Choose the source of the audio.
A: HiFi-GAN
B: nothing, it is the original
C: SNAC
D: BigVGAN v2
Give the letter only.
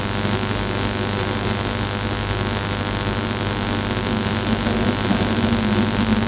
B